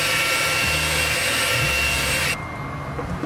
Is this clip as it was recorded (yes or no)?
yes